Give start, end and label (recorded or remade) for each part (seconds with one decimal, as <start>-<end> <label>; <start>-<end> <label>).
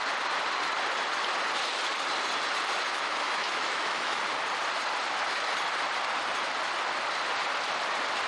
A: 0.0-2.9 recorded; 2.9-4.2 remade; 4.2-8.3 recorded